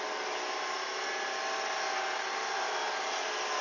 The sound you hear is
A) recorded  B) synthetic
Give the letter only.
A